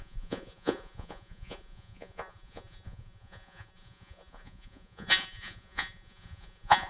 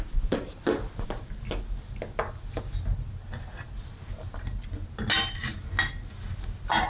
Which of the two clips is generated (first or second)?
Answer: first